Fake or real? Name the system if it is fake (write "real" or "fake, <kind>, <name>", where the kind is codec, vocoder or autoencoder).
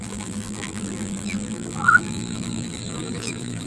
fake, vocoder, BigVGAN v2